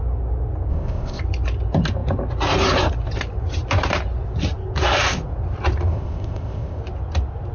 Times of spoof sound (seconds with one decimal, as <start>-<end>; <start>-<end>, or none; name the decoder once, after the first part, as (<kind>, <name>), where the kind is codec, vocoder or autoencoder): 0.7-1.2 (codec, ZipCodec); 5.9-6.8